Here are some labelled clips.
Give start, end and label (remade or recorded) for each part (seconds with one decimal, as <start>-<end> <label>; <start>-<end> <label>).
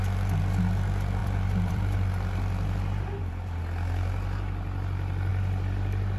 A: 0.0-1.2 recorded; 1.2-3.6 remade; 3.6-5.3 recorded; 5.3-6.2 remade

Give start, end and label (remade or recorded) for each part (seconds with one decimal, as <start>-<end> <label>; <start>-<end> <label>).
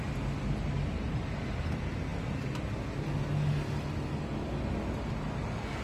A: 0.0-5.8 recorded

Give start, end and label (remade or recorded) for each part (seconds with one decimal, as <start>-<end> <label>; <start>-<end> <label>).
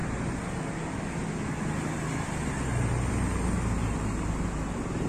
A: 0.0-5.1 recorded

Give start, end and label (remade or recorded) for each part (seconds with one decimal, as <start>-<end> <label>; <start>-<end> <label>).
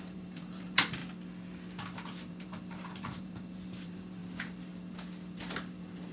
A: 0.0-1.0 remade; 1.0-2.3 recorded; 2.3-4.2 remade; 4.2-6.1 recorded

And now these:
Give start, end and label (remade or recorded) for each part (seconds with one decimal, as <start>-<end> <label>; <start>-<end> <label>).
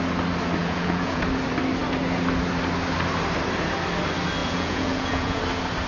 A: 0.0-0.6 recorded; 0.6-1.2 remade; 1.2-4.4 recorded; 4.4-5.4 remade; 5.4-5.9 recorded